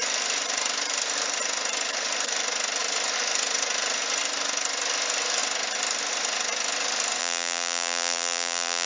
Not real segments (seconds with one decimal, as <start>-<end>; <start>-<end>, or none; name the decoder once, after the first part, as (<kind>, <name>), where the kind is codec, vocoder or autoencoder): 7.2-8.9 (vocoder, BigVGAN v2)